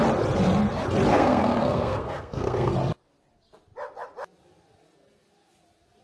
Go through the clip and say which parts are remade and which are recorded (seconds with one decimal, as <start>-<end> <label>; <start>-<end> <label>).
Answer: 0.0-1.1 recorded; 1.1-2.7 remade; 2.7-6.0 recorded